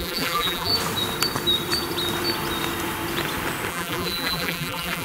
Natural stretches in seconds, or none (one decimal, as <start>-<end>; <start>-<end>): 0.7-3.7